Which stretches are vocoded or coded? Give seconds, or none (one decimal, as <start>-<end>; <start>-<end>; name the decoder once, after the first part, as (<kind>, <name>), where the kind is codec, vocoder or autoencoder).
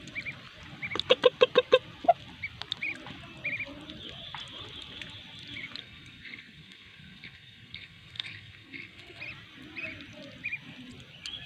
5.8-9.2 (codec, SNAC)